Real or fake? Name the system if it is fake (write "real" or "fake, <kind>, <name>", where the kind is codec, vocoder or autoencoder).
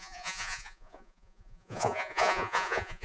fake, vocoder, Vocos